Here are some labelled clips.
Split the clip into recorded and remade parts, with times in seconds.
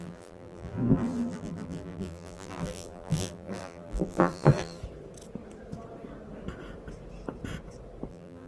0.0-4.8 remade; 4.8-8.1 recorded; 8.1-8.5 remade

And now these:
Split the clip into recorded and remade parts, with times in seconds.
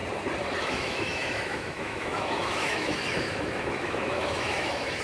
0.0-0.6 recorded; 0.6-5.0 remade